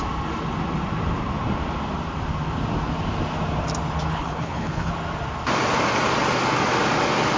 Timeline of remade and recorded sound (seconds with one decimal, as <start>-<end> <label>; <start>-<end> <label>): 0.0-4.1 recorded; 4.1-4.9 remade; 4.9-7.4 recorded